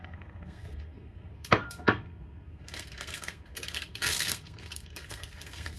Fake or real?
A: fake